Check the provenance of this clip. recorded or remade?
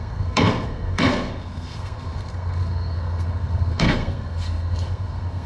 remade